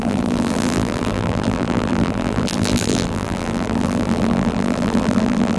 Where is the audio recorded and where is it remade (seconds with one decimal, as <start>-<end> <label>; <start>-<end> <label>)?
0.0-5.6 remade